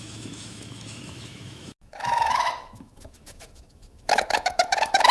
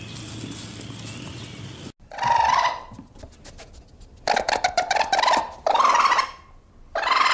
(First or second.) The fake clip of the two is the first